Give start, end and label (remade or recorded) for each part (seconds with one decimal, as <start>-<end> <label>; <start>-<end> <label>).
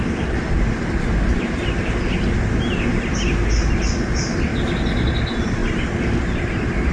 0.0-6.9 recorded